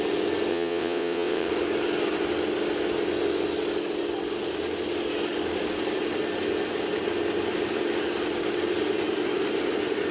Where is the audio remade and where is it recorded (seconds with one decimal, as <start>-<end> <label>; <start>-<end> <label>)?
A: 0.0-0.5 recorded; 0.5-1.5 remade; 1.5-10.1 recorded